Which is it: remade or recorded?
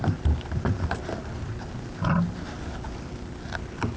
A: recorded